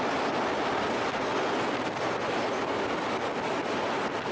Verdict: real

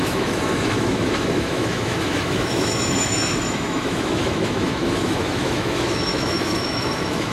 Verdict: fake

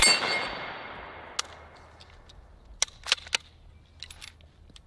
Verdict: real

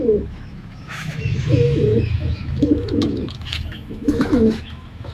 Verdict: fake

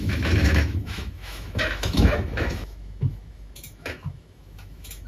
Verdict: fake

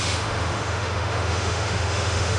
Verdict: fake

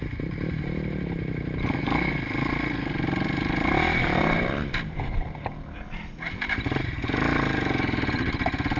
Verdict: real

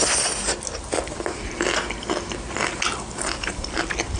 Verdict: real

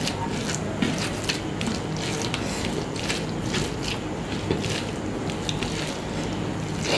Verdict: real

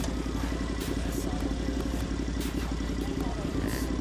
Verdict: real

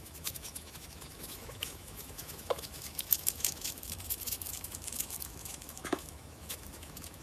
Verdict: fake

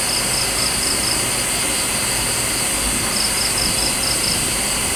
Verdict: real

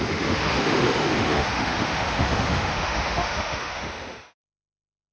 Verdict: fake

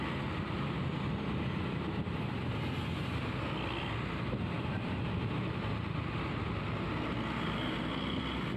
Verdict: real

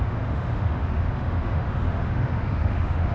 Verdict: fake